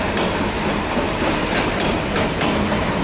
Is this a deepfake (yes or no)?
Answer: no